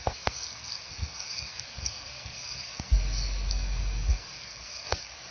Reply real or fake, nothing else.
fake